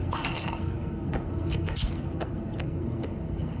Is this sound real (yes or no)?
no